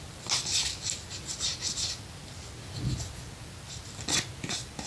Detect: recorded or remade recorded